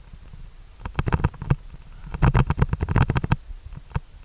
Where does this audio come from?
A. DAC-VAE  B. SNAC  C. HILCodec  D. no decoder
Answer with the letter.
D